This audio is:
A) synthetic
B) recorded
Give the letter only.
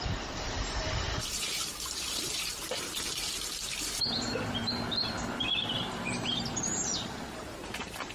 A